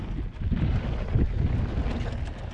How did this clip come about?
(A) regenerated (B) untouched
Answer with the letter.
B